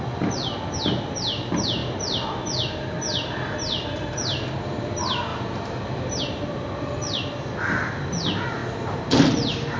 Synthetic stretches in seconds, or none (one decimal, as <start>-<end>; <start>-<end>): 5.3-6.2